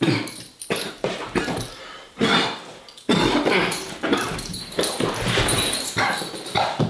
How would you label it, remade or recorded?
remade